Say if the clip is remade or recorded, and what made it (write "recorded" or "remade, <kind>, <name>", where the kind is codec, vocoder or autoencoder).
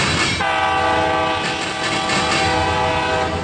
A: recorded